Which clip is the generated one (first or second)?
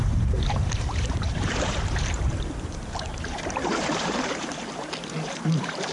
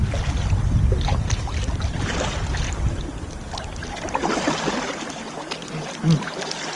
first